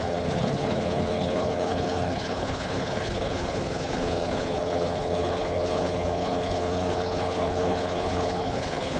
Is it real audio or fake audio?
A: fake